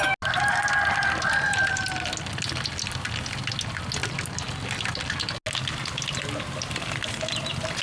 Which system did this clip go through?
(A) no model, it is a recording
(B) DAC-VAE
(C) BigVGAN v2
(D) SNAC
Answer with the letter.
A